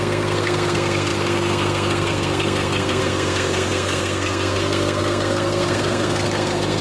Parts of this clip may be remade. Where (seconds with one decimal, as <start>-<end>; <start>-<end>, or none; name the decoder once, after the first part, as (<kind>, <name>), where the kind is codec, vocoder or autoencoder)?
0.0-6.8 (codec, SNAC)